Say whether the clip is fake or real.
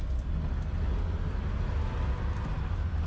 real